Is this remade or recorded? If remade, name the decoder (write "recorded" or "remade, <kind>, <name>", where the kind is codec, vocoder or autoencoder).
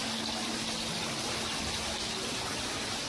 recorded